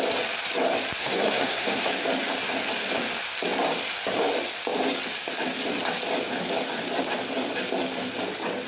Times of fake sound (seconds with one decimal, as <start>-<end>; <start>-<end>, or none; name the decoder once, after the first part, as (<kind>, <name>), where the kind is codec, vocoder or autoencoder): 1.0-1.9 (codec, SNAC)